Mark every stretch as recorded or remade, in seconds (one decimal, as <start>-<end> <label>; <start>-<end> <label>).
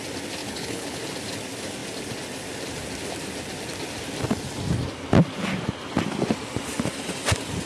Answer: 0.0-0.4 recorded; 0.4-1.0 remade; 1.0-7.7 recorded